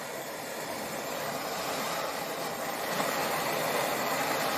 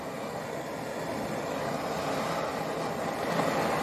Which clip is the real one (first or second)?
second